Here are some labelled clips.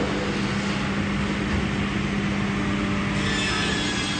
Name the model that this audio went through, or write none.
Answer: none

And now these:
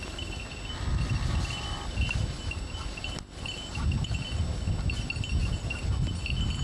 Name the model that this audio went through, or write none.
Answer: none